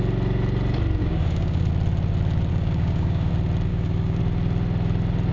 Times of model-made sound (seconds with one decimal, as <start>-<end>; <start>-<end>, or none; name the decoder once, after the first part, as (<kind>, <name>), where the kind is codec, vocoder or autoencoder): 1.0-1.7 (codec, DAC); 2.5-3.3; 3.7-4.2